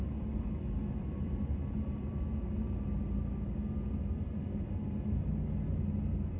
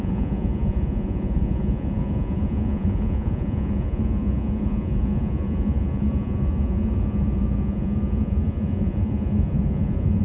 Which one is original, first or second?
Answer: first